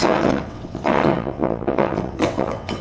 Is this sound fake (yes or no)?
yes